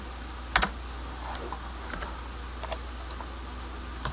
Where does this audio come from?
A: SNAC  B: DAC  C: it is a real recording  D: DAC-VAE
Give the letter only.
C